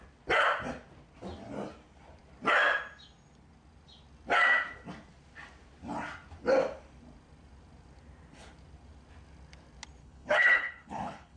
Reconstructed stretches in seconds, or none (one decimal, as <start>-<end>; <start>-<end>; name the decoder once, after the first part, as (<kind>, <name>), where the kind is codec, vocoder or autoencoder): 10.0-11.4 (codec, HILCodec)